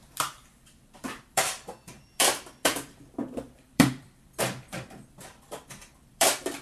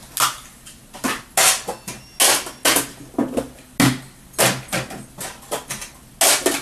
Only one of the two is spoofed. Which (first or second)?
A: first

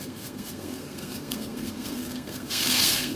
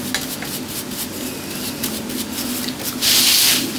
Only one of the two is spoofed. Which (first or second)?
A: first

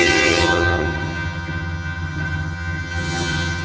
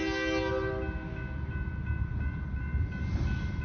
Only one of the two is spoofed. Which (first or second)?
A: first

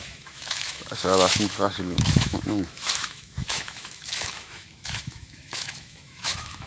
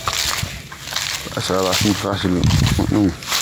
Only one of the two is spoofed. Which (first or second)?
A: first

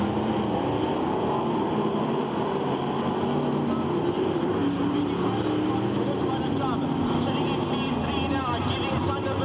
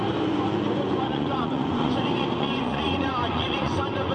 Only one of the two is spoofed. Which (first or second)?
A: second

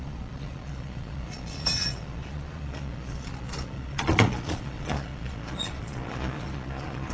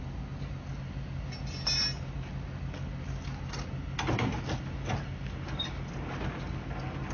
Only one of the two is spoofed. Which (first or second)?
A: first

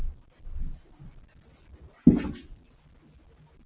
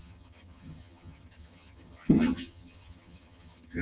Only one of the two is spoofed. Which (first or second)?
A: second